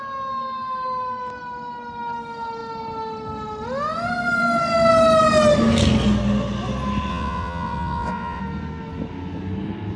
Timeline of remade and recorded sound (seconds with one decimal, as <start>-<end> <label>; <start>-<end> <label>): 0.0-7.1 recorded; 7.1-8.4 remade; 8.4-10.0 recorded